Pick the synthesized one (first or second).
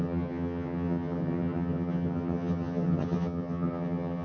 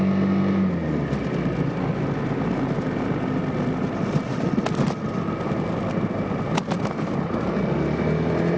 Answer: first